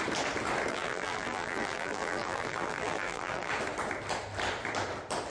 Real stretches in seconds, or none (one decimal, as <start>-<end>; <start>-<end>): 0.0-0.7; 3.5-5.3